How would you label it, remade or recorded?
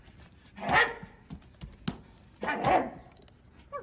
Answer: recorded